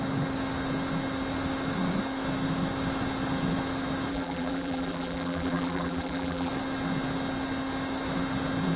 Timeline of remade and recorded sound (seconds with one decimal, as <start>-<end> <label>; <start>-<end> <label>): 0.0-4.1 recorded; 4.1-6.5 remade; 6.5-8.8 recorded